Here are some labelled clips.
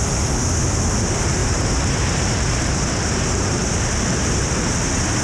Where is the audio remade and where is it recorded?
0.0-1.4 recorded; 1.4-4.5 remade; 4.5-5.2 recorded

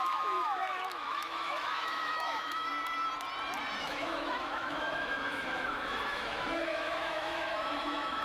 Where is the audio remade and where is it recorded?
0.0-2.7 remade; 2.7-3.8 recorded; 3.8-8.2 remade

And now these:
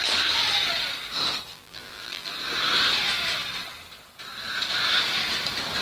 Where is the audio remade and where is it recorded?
0.0-1.5 recorded; 1.5-2.3 remade; 2.3-5.8 recorded

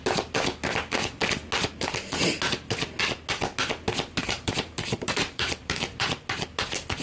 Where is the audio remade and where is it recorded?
0.0-4.2 recorded; 4.2-6.1 remade; 6.1-7.0 recorded

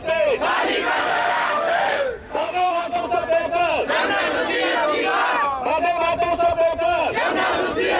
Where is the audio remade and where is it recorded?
0.0-1.0 recorded; 1.0-3.0 remade; 3.0-8.0 recorded

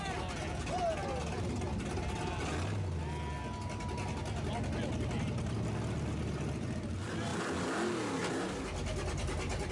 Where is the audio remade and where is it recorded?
0.0-9.7 recorded

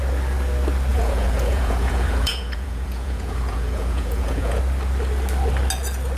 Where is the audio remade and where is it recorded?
0.0-0.9 recorded; 0.9-4.6 remade; 4.6-6.2 recorded